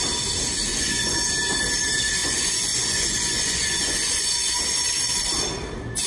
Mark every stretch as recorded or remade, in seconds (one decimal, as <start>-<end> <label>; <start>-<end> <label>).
0.0-0.7 recorded; 0.7-1.3 remade; 1.3-2.2 recorded; 2.2-4.6 remade; 4.6-6.1 recorded